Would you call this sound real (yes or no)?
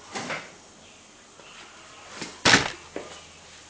yes